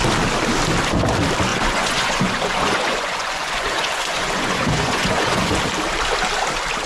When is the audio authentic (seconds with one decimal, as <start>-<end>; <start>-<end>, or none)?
0.0-1.5; 5.6-6.9